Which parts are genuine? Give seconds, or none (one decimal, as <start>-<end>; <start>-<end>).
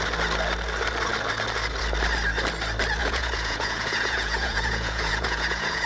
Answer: 0.0-3.0